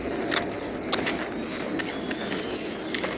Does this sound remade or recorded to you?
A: recorded